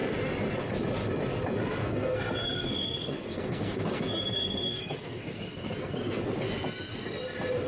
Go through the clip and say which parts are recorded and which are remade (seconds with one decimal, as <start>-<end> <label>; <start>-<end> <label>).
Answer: 0.0-1.8 recorded; 1.8-6.2 remade; 6.2-7.7 recorded